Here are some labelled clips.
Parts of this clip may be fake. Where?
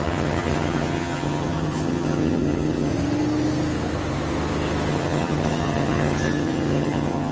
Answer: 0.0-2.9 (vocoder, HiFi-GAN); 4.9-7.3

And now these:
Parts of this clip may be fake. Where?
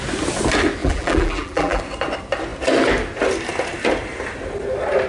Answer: 0.8-1.8 (vocoder, BigVGAN v2)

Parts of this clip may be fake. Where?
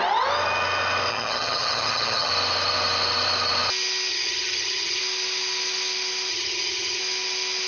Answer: 1.1-2.3 (vocoder, HiFi-GAN); 4.1-5.0; 6.3-7.0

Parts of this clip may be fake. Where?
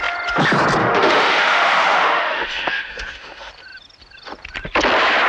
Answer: 0.8-3.5 (autoencoder, DAC-VAE)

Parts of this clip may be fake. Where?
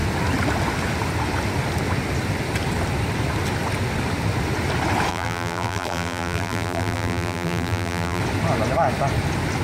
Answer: 5.1-8.2 (vocoder, BigVGAN v2)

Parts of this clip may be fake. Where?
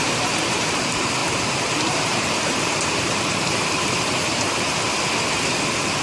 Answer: 0.0-0.6 (vocoder, BigVGAN v2); 1.2-4.8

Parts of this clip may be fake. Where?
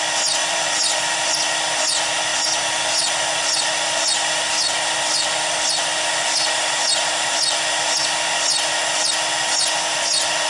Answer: 0.4-1.3 (vocoder, BigVGAN v2)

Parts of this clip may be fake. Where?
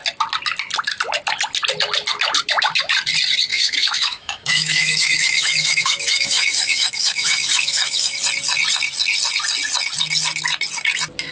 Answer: 3.5-8.2 (autoencoder, DAC-VAE)